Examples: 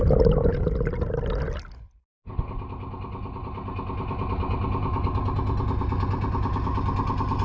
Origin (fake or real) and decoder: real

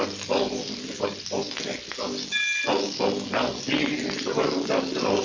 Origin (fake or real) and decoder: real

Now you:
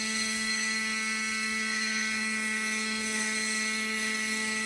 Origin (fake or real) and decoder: fake, codec, DAC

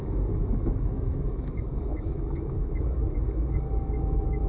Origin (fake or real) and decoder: fake, codec, DAC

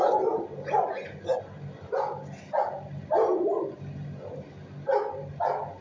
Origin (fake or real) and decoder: real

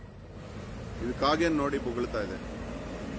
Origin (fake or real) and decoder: real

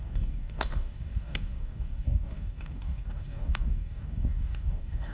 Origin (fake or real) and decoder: fake, codec, DAC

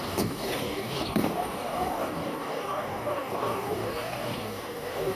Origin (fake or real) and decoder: fake, codec, DAC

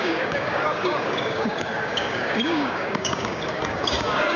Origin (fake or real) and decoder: fake, codec, DAC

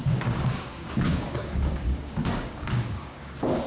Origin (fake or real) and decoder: fake, codec, DAC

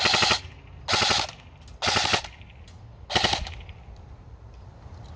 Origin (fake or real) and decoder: real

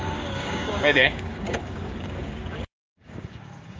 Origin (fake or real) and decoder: fake, codec, DAC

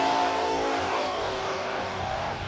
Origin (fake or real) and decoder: fake, codec, DAC